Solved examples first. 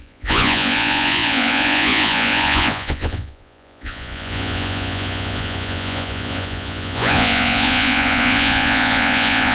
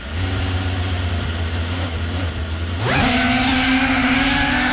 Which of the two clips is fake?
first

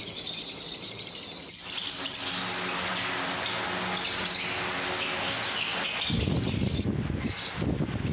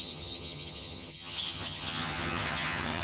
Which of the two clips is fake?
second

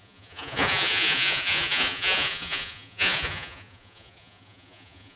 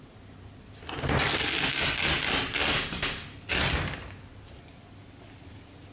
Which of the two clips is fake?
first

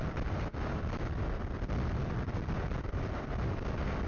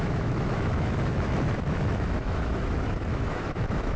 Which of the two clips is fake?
second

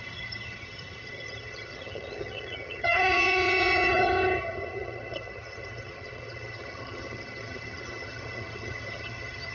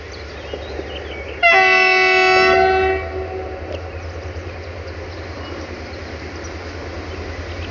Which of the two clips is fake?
first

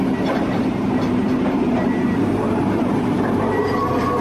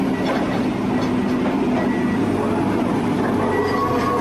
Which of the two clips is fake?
first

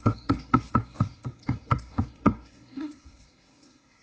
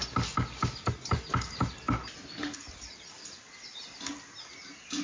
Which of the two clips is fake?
first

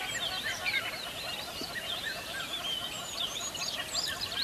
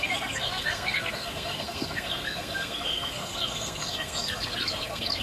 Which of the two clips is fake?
second